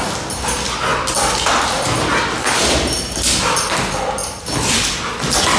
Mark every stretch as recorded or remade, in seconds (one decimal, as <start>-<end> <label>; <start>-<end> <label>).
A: 0.0-5.6 recorded